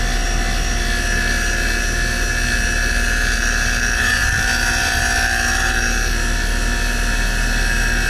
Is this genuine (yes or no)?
yes